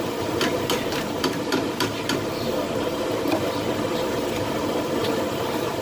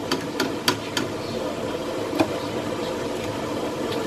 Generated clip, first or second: first